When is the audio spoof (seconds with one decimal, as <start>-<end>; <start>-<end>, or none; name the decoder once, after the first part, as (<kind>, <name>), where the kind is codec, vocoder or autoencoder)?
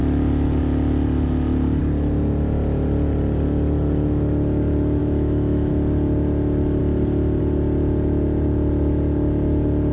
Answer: 5.0-5.7 (autoencoder, DAC-VAE)